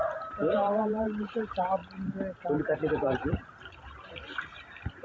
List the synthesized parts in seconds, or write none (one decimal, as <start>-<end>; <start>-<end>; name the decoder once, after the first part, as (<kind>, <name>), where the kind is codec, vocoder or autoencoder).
0.0-1.8 (vocoder, BigVGAN v2); 2.8-5.0